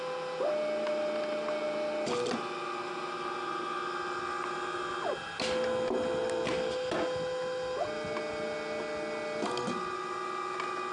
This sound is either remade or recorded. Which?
recorded